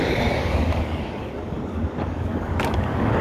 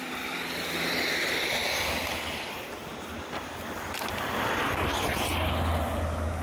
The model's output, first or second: first